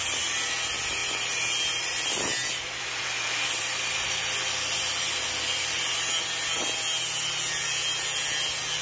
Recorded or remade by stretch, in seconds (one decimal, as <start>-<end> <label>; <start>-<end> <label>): 0.0-1.0 recorded; 1.0-6.1 remade; 6.1-8.8 recorded